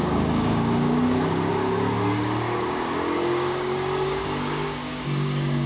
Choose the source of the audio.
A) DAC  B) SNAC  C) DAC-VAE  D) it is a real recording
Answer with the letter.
A